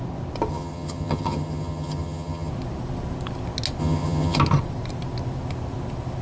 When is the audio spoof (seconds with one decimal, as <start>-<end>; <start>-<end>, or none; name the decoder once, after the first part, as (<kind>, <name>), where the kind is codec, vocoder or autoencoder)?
0.5-2.5 (vocoder, HiFi-GAN); 3.8-4.4